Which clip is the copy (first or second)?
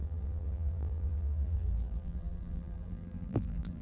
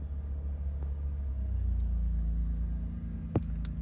first